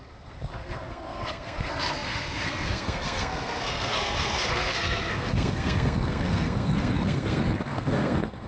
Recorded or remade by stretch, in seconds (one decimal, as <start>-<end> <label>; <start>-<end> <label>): 0.0-8.5 remade